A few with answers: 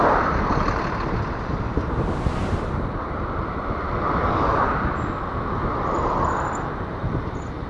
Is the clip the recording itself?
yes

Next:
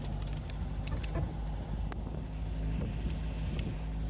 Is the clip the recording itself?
yes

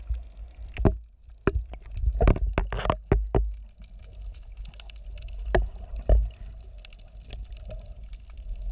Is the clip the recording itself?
yes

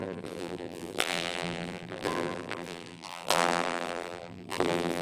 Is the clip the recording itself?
no